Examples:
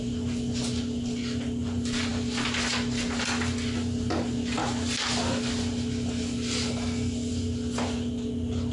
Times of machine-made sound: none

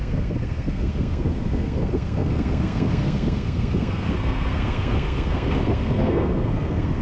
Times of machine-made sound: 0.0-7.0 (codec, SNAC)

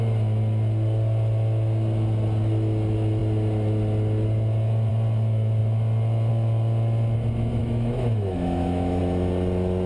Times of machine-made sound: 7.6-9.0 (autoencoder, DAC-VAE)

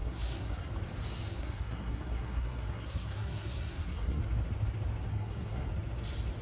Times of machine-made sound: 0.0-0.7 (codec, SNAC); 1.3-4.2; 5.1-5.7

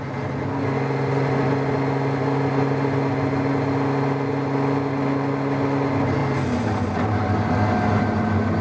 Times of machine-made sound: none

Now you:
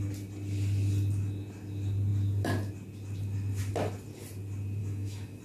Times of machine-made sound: 4.8-5.4 (autoencoder, DAC-VAE)